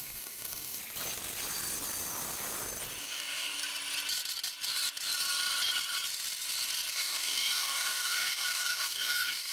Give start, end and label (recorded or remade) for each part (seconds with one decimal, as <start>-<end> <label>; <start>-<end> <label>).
0.0-0.8 remade; 0.8-3.0 recorded; 3.0-3.6 remade; 3.6-6.9 recorded; 6.9-9.5 remade